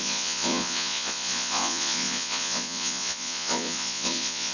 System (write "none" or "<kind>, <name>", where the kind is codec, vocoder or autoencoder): vocoder, Vocos